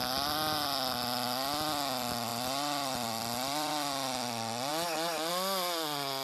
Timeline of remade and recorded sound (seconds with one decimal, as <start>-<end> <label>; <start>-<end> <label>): 0.0-2.3 recorded; 2.3-3.7 remade; 3.7-6.2 recorded